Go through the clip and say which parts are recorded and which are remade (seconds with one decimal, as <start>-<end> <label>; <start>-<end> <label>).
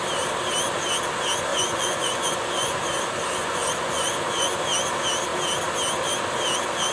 0.0-1.5 recorded; 1.5-2.8 remade; 2.8-3.4 recorded; 3.4-4.6 remade; 4.6-6.9 recorded